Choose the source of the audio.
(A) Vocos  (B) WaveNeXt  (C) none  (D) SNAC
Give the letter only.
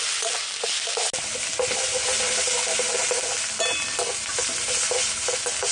C